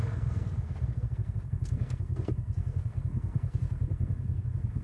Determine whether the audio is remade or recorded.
remade